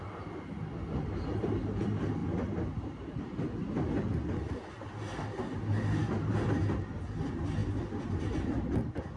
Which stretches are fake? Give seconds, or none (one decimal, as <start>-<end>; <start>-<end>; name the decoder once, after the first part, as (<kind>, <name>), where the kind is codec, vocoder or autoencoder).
none